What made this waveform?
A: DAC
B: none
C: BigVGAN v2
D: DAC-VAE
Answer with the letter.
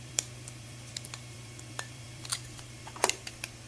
C